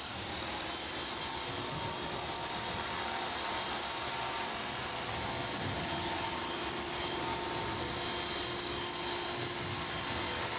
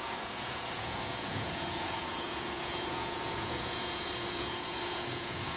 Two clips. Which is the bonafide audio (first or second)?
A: first